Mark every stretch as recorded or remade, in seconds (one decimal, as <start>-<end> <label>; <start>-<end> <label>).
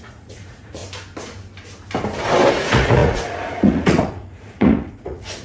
0.0-0.8 remade; 0.8-2.5 recorded; 2.5-5.4 remade